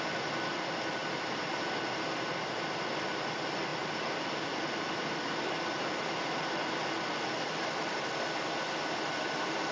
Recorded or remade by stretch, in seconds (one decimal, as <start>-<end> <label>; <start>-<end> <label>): 0.0-9.7 recorded